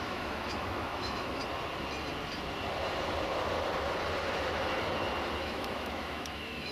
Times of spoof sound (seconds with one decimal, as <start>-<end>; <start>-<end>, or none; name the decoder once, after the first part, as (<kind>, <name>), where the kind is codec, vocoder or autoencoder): 0.0-1.4 (autoencoder, DAC-VAE); 5.4-6.7